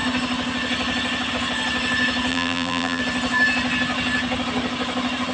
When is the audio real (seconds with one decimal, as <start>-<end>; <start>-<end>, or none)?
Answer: 0.0-2.3; 3.0-5.3